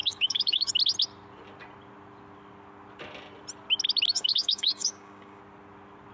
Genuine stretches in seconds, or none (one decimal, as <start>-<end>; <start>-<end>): 0.7-4.1; 5.4-6.1